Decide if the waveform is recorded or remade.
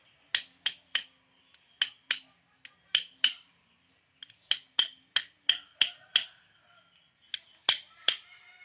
recorded